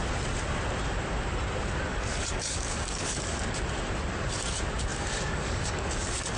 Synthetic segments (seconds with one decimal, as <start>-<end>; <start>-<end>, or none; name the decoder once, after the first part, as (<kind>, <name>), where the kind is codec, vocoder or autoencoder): 1.9-3.4 (codec, DAC); 4.9-6.4